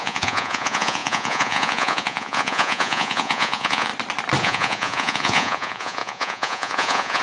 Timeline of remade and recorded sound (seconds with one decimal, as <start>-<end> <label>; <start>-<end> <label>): 0.0-3.9 remade; 3.9-4.4 recorded; 4.4-7.2 remade